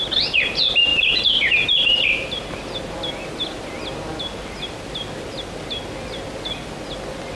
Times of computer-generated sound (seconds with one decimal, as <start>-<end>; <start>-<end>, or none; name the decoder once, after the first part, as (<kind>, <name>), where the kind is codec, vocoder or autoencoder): 0.9-2.9 (vocoder, BigVGAN v2)